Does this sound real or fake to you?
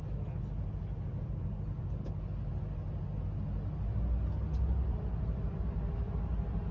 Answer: real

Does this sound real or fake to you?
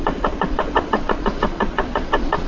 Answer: fake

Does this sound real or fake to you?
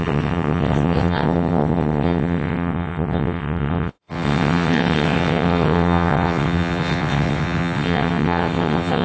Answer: fake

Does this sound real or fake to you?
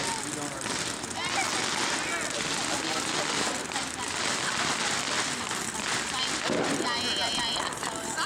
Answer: real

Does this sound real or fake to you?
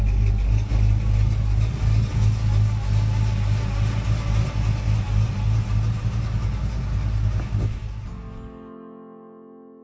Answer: real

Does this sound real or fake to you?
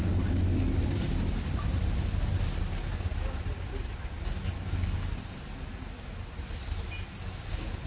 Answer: real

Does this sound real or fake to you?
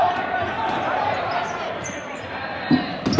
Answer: real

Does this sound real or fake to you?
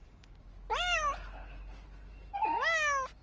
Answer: real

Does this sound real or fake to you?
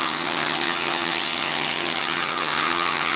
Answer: fake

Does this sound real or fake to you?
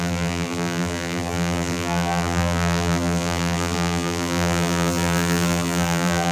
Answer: fake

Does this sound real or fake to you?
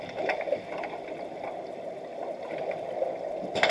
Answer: real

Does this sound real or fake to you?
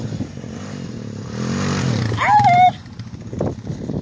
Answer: real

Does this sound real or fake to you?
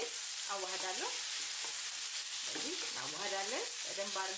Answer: real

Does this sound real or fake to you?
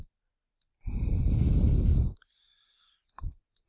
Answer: real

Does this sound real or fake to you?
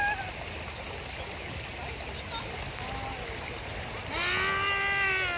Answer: real